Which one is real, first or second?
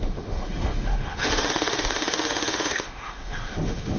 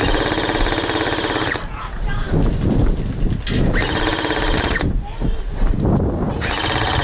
second